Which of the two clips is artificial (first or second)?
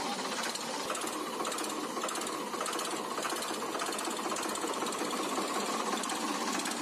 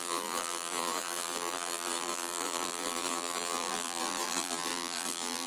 second